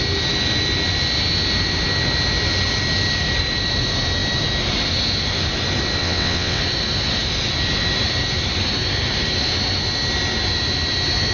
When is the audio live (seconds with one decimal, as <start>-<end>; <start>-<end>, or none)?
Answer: 0.0-6.0; 6.6-11.3